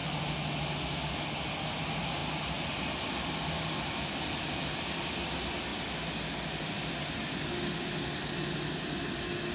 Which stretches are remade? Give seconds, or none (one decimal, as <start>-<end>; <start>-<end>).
none